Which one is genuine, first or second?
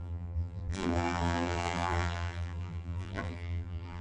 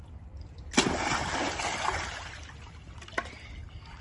second